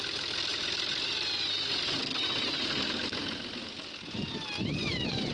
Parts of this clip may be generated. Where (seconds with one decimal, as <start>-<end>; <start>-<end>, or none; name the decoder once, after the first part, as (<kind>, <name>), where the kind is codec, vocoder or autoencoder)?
4.6-5.3 (vocoder, Vocos)